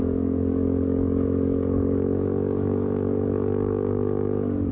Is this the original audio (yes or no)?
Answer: no